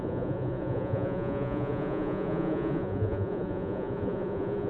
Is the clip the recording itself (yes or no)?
no